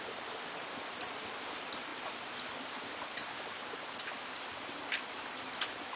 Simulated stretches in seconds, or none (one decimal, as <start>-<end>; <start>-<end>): none